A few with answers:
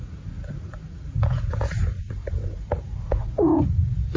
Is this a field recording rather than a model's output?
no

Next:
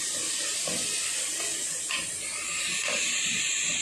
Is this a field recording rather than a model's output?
yes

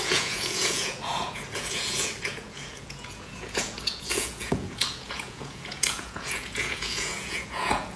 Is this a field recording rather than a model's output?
no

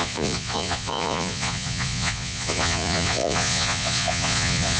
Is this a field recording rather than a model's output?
no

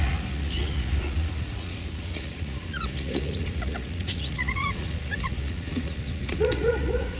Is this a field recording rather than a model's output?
no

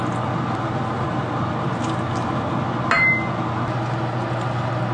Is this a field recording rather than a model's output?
yes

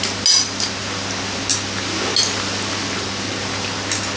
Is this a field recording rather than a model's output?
yes